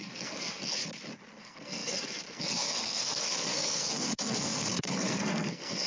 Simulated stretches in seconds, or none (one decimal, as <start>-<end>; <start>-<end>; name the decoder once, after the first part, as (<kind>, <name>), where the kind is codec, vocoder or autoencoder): 0.0-0.8 (codec, SNAC); 1.4-5.9

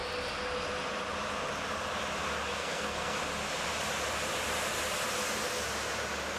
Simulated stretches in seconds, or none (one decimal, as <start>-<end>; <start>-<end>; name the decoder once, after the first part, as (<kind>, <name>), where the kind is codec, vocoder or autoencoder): 2.5-3.2 (codec, SNAC)

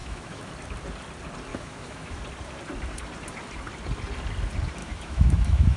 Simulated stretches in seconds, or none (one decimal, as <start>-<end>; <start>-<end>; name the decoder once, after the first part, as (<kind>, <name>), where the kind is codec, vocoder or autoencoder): 0.0-0.5 (autoencoder, DAC-VAE); 1.5-2.2; 4.8-5.8

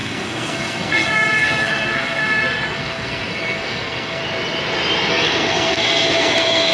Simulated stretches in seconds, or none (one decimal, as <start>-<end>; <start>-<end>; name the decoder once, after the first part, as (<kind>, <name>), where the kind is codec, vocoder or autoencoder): 0.0-4.2 (codec, SNAC); 5.1-6.7

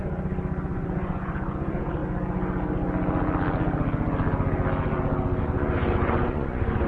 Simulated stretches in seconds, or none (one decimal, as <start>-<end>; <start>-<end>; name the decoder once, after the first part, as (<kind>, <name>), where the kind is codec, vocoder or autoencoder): 0.7-2.0 (vocoder, Vocos); 5.4-6.9

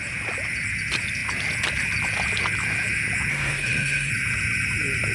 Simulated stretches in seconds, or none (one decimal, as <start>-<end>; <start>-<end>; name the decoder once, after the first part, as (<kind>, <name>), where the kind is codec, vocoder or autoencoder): 3.3-4.1 (codec, SNAC)

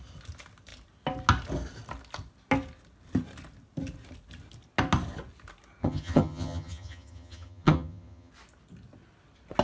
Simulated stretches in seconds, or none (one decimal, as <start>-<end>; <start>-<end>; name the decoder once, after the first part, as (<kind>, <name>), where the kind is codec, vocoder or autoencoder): 5.8-8.3 (vocoder, HiFi-GAN)

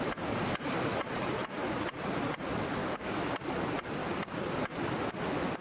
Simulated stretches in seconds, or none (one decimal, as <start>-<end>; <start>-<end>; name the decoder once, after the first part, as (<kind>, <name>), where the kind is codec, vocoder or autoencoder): 2.8-3.3 (codec, DAC)